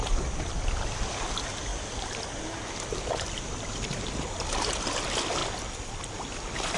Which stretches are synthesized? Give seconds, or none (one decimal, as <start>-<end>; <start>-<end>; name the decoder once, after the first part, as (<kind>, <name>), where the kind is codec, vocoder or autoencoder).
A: none